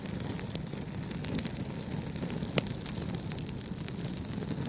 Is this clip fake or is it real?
real